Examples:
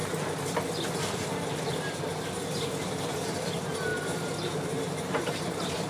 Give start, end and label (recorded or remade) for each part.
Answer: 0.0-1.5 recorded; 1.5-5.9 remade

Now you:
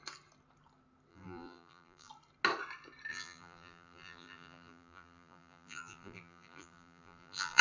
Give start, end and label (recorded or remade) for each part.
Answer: 0.0-1.1 recorded; 1.1-2.1 remade; 2.1-3.1 recorded; 3.1-7.6 remade

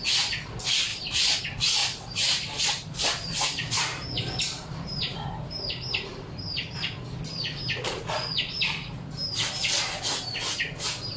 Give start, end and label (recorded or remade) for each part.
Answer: 0.0-0.9 recorded; 0.9-1.4 remade; 1.4-1.8 recorded; 1.8-5.3 remade; 5.3-11.2 recorded

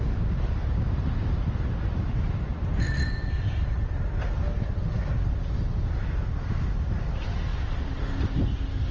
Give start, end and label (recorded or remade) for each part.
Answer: 0.0-1.9 recorded; 1.9-3.5 remade; 3.5-7.5 recorded; 7.5-8.0 remade; 8.0-8.9 recorded

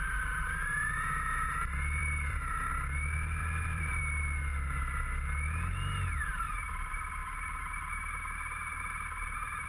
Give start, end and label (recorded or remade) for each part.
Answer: 0.0-2.0 recorded; 2.0-2.7 remade; 2.7-3.4 recorded; 3.4-4.0 remade; 4.0-9.7 recorded

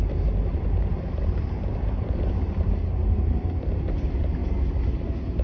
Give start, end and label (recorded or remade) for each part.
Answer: 0.0-0.5 recorded; 0.5-3.7 remade; 3.7-5.4 recorded

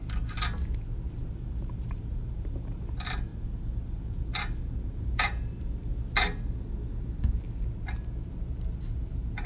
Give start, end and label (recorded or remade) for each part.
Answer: 0.0-1.0 recorded; 1.0-5.9 remade; 5.9-7.8 recorded; 7.8-9.5 remade

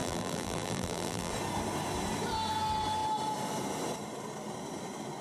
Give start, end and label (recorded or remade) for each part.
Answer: 0.0-1.3 remade; 1.3-5.2 recorded